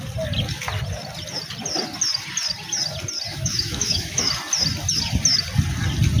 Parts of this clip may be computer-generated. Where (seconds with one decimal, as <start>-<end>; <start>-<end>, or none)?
3.3-4.3